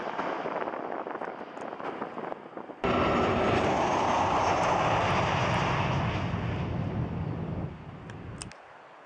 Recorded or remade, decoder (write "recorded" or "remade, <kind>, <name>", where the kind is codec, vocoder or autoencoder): recorded